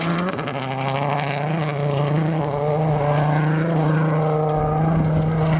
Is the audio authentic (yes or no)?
yes